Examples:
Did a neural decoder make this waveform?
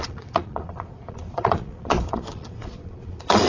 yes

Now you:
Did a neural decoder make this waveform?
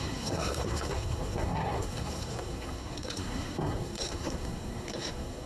yes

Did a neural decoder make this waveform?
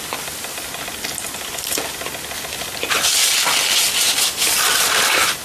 no